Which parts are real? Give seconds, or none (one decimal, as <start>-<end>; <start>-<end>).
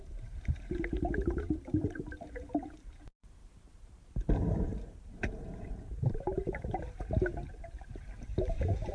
none